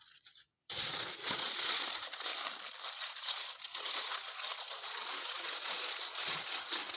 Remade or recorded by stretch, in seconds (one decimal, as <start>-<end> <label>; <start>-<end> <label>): 0.0-2.3 remade; 2.3-2.9 recorded; 2.9-7.0 remade